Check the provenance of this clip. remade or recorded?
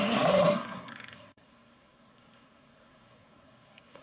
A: remade